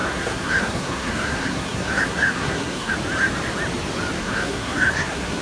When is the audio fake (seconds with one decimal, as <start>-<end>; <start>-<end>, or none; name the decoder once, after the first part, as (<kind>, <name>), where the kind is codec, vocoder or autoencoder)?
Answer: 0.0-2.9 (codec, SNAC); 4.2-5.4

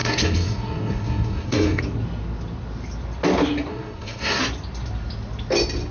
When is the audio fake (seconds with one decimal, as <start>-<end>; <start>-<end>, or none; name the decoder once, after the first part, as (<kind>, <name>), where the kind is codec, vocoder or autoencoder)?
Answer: 0.0-1.8 (codec, SNAC); 3.7-4.4

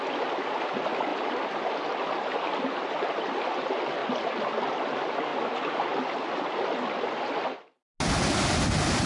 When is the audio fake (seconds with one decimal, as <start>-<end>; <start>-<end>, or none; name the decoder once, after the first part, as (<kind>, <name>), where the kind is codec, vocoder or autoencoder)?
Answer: none

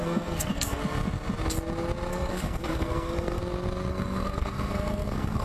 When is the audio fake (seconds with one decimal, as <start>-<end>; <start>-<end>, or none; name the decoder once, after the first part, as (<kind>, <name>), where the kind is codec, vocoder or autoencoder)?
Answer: 0.0-0.8 (codec, SNAC); 2.1-3.4; 3.9-5.4

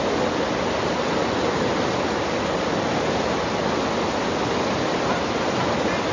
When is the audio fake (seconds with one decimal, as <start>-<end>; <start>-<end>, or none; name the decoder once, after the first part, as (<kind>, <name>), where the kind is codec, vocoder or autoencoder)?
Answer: none

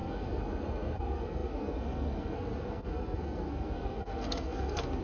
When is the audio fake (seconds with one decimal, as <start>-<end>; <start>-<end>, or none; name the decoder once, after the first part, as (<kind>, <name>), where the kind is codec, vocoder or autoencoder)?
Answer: 0.0-5.0 (codec, SNAC)

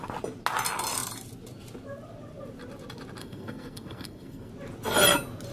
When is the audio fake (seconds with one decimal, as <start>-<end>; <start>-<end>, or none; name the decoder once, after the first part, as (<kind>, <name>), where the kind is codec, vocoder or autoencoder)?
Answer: 3.2-4.5 (codec, SNAC)